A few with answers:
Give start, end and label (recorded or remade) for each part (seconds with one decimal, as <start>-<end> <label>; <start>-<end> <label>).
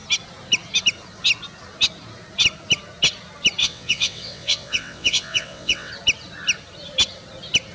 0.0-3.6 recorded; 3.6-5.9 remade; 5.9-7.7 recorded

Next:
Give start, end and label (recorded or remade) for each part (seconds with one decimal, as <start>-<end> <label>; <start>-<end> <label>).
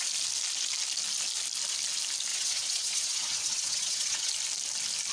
0.0-2.3 recorded; 2.3-4.3 remade; 4.3-5.1 recorded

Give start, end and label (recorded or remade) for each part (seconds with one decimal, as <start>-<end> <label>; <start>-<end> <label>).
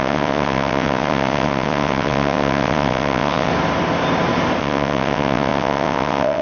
0.0-3.5 remade; 3.5-4.6 recorded; 4.6-6.4 remade